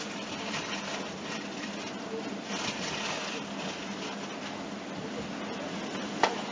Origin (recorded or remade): recorded